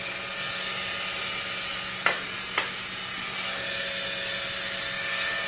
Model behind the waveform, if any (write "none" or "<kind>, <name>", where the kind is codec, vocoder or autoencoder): none